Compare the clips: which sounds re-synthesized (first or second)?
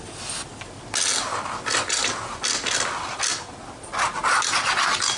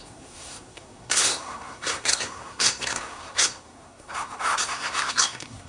second